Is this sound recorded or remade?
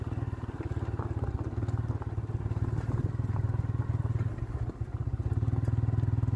recorded